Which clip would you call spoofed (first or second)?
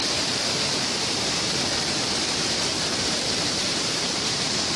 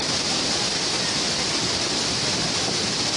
first